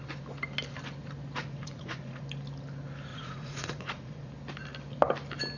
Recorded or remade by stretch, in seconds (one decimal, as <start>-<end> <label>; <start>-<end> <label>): 0.0-1.4 recorded; 1.4-2.2 remade; 2.2-3.1 recorded; 3.1-4.3 remade; 4.3-5.6 recorded